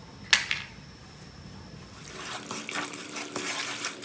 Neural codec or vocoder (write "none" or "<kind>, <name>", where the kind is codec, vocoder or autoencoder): none